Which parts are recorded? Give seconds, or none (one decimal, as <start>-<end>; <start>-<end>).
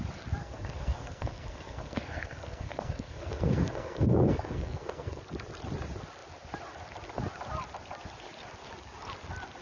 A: 0.0-0.4; 5.2-9.6